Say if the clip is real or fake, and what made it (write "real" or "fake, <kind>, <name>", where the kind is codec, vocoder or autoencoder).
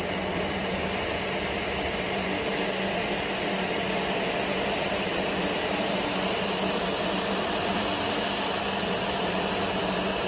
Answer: real